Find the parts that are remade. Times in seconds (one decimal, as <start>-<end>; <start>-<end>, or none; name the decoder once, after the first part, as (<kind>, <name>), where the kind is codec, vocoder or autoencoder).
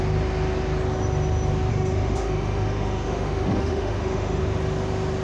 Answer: 1.7-4.4 (autoencoder, DAC-VAE)